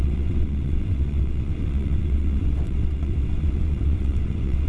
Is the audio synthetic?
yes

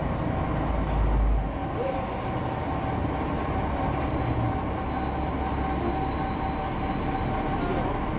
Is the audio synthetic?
no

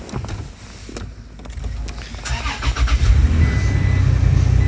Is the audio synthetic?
no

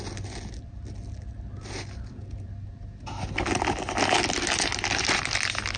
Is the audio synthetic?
no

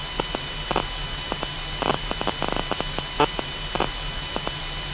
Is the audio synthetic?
no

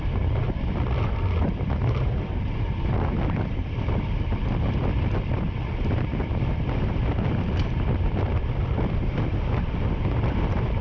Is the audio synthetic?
no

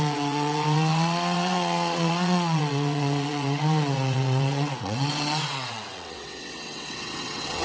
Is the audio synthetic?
yes